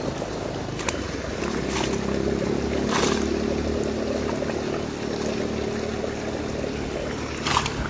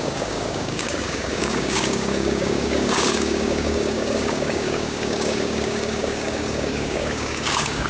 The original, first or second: first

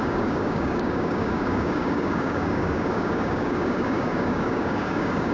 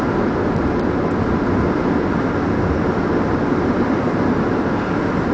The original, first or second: second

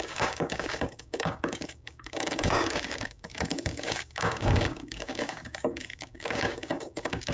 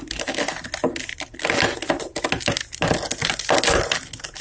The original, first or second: second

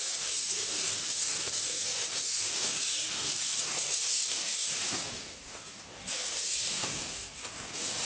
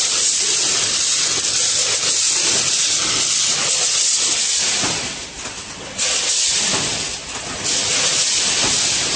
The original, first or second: second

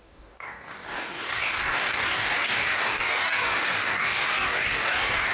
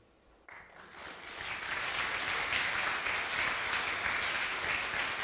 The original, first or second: second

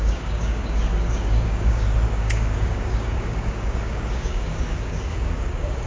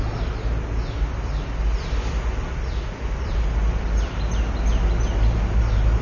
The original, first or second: second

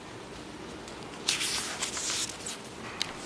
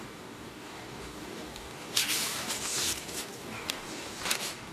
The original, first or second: first